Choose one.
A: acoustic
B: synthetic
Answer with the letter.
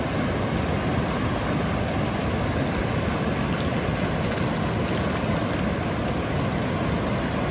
A